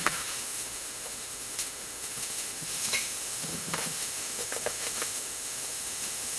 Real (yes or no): no